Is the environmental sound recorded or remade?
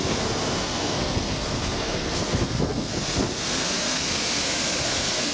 remade